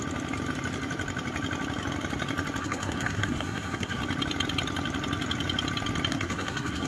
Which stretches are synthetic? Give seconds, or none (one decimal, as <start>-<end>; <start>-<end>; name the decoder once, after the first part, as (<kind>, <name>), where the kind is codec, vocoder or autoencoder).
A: 2.6-4.0 (codec, SNAC); 6.1-6.9